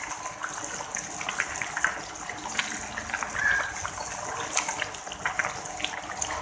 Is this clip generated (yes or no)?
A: no